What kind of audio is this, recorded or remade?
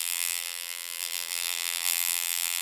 remade